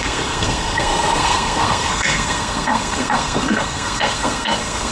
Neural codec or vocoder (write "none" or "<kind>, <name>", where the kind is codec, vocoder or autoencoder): codec, SNAC